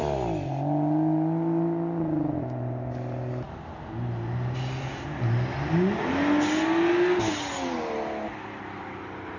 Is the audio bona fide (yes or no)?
yes